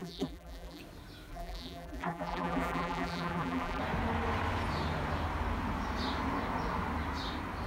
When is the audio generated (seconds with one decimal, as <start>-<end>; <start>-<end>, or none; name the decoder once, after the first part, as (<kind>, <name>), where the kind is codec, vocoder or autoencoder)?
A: 0.0-0.8 (vocoder, BigVGAN v2); 1.3-3.8